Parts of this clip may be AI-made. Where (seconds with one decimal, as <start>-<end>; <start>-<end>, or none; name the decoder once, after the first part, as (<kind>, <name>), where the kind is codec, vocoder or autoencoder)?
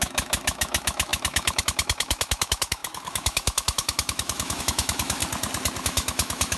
0.0-5.2 (autoencoder, DAC-VAE); 5.8-6.6